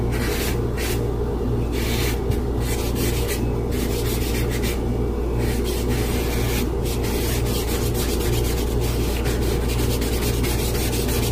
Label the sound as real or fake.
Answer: real